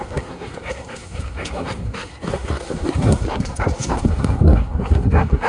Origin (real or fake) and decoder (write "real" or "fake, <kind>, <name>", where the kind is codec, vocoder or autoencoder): fake, codec, SNAC